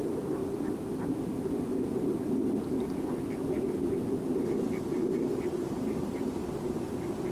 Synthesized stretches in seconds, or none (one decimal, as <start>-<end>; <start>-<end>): 0.0-0.4; 4.8-6.4